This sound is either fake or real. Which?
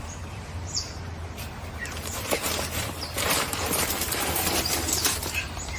fake